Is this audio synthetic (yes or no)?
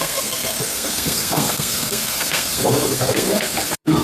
yes